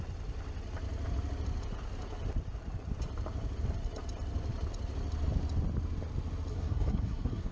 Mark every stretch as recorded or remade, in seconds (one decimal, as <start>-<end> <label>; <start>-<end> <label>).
0.0-6.5 recorded; 6.5-7.5 remade